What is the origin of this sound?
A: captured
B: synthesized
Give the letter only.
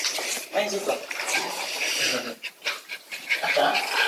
A